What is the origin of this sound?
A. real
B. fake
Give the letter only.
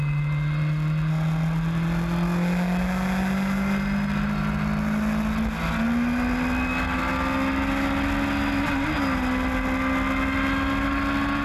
A